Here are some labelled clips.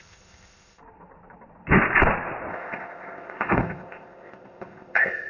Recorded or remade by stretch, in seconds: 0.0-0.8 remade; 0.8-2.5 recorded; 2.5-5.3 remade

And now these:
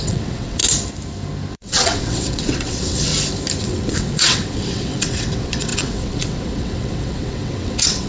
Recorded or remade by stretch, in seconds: 0.0-0.6 remade; 0.6-1.5 recorded; 1.5-3.1 remade; 3.1-3.6 recorded; 3.6-8.1 remade

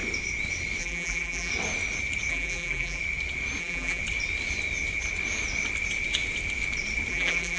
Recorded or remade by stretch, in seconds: 0.0-0.8 recorded; 0.8-1.5 remade; 1.5-2.3 recorded; 2.3-3.0 remade; 3.0-3.6 recorded; 3.6-4.0 remade; 4.0-7.1 recorded; 7.1-7.6 remade

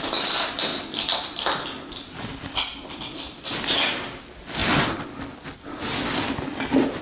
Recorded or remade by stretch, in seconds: 0.0-7.0 recorded